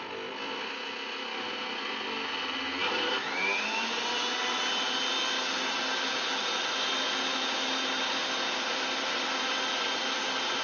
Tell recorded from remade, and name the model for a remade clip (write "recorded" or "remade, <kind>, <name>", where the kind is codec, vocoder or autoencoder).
recorded